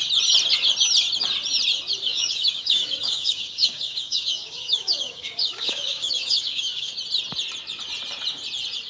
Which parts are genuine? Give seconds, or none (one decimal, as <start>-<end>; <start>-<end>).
0.0-2.1; 6.9-8.9